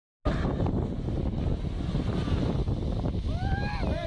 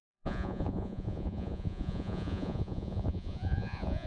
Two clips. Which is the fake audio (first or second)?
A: second